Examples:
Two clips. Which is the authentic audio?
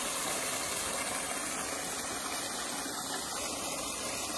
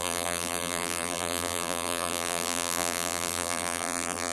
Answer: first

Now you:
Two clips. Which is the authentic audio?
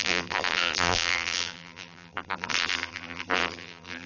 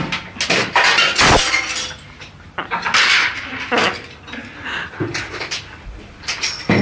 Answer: second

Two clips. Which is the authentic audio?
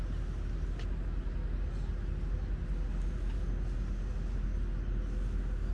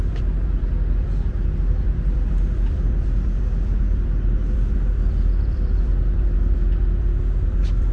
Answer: first